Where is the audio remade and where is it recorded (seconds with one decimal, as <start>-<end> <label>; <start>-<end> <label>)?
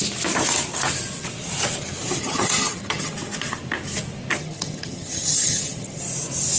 0.0-2.2 recorded; 2.2-3.1 remade; 3.1-4.4 recorded; 4.4-6.0 remade; 6.0-6.6 recorded